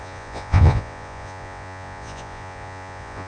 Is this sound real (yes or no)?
no